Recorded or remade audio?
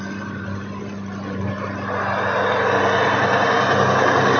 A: recorded